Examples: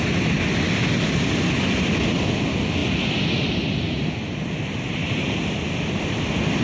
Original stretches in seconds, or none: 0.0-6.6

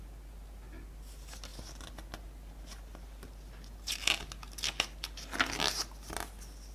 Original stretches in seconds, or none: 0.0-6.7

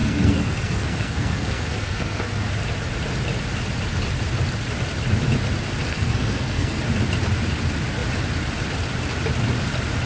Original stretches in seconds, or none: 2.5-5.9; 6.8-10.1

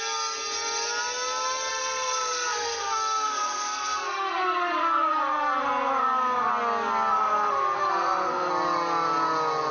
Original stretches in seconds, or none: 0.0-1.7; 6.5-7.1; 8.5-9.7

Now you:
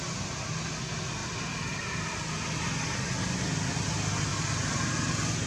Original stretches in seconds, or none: 0.0-5.5